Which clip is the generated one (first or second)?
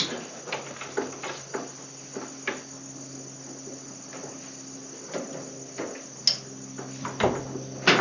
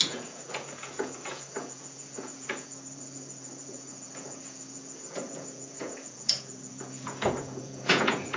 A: second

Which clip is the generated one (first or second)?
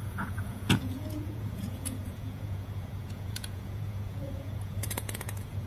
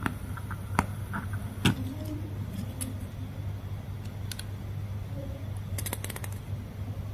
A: first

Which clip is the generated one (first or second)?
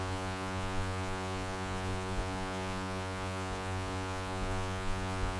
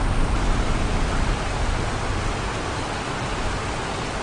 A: first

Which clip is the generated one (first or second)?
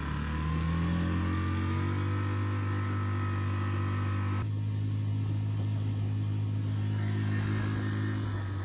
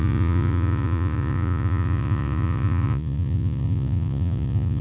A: second